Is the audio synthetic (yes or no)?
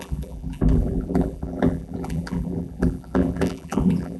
yes